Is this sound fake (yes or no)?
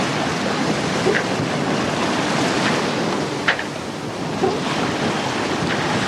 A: yes